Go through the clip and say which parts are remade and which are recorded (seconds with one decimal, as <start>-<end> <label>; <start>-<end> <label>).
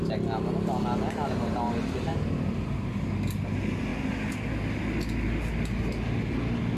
0.0-2.1 recorded; 2.1-2.9 remade; 2.9-6.8 recorded